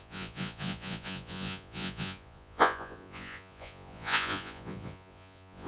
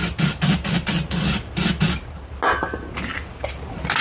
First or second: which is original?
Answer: second